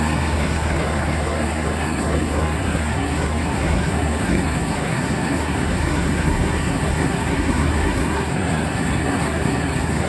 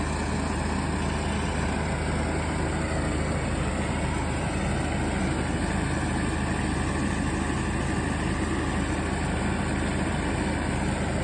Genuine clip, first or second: second